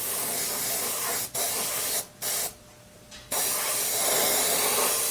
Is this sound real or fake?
real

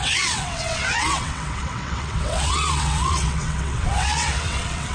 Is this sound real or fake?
fake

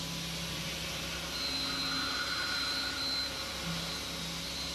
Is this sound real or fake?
real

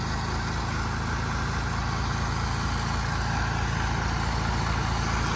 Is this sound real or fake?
real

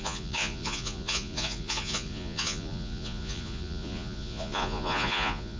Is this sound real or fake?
fake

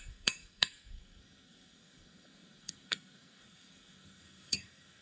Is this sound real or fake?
fake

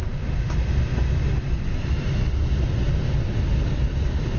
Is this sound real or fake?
real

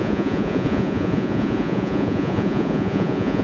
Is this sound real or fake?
fake